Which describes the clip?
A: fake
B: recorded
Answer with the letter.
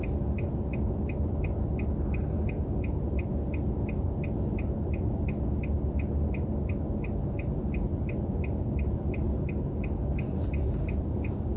B